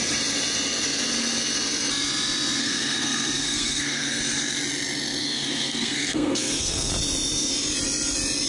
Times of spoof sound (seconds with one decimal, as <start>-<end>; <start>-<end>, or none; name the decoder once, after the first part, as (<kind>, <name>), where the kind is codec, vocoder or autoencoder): 2.6-4.2 (codec, SNAC); 5.2-6.9